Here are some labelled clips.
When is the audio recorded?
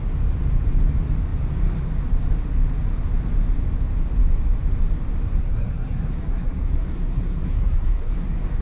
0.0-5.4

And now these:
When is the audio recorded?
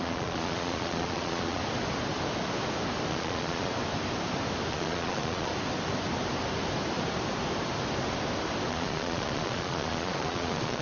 1.6-3.1; 3.7-4.7; 5.5-8.7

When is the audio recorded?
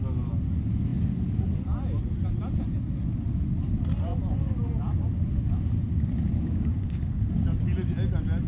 0.0-6.4; 7.3-8.5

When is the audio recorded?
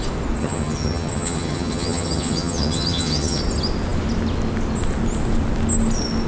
0.0-0.4; 3.4-6.3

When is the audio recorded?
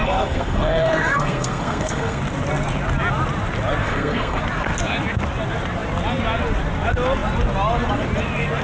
2.2-3.8; 4.4-8.6